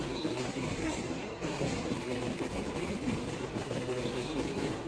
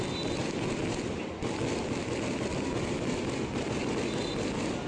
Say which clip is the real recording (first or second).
second